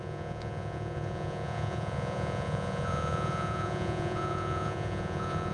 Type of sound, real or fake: fake